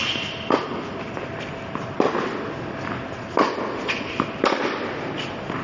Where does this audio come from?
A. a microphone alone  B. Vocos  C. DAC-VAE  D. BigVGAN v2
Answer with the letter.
A